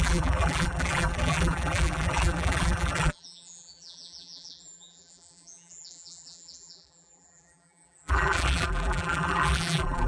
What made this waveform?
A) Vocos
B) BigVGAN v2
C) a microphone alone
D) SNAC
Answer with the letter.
B